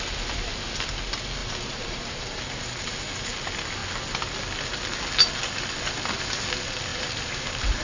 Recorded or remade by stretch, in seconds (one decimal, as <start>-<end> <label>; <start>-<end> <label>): 0.0-1.4 recorded; 1.4-2.4 remade; 2.4-6.9 recorded; 6.9-7.8 remade